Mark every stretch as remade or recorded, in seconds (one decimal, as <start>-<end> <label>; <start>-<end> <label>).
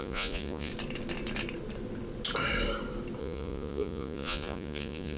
0.0-0.7 remade; 0.7-3.2 recorded; 3.2-5.2 remade